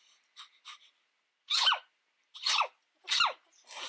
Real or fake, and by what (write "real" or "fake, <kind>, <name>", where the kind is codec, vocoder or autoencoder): real